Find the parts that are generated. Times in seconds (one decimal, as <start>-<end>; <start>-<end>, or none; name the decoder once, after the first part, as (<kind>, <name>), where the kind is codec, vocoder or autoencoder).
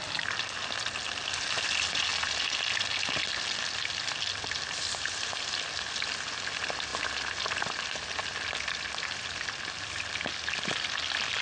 none